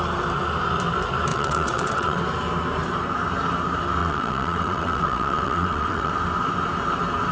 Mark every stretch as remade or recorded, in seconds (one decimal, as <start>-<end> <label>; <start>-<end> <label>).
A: 0.0-1.3 recorded; 1.3-2.2 remade; 2.2-4.0 recorded; 4.0-6.1 remade; 6.1-7.3 recorded